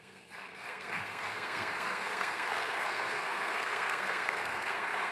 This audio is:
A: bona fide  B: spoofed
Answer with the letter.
B